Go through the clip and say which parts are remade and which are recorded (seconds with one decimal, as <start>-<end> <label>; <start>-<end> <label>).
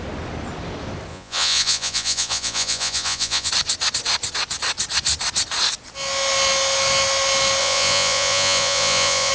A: 0.0-1.1 recorded; 1.1-3.5 remade; 3.5-7.6 recorded; 7.6-9.3 remade